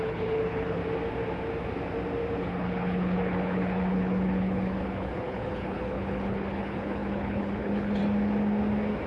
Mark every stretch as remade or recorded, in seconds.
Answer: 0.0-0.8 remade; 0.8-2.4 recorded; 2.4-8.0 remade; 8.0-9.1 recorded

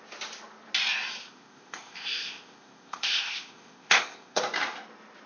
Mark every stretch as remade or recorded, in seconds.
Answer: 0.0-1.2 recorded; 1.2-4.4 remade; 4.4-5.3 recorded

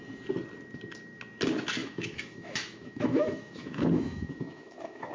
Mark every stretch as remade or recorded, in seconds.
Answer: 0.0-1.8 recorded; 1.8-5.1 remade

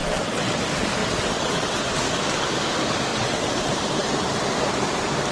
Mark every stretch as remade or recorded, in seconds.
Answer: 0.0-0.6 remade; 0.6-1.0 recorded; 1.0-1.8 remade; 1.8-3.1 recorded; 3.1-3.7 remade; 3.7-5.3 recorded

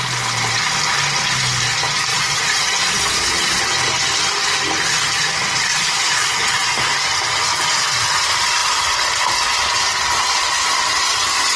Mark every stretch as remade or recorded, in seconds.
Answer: 0.0-2.1 recorded; 2.1-3.6 remade; 3.6-5.7 recorded; 5.7-6.3 remade; 6.3-11.6 recorded

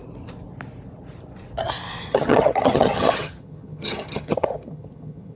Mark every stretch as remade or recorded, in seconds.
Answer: 0.0-2.0 recorded; 2.0-5.4 remade

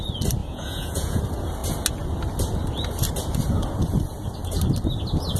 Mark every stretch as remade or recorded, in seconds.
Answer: 0.0-0.4 recorded; 0.4-1.2 remade; 1.2-5.4 recorded